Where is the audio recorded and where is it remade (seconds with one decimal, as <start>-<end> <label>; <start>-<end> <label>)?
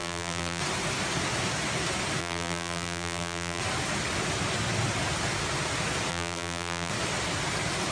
0.0-0.6 remade; 0.6-2.2 recorded; 2.2-3.6 remade; 3.6-6.1 recorded; 6.1-6.9 remade; 6.9-7.9 recorded